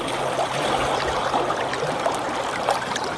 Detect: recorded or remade recorded